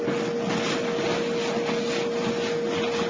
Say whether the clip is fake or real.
real